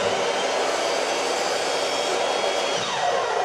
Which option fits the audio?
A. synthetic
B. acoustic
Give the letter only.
B